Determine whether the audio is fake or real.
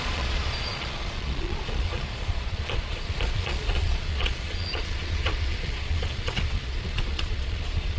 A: fake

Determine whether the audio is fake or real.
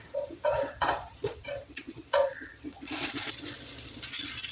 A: fake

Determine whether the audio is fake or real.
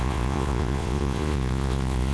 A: fake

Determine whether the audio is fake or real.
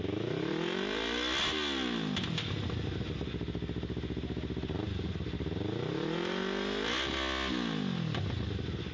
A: real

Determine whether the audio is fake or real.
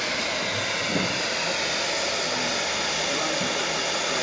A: real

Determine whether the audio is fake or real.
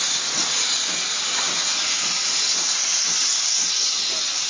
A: real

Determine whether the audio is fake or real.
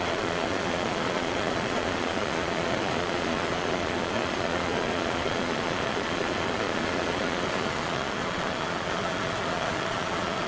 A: fake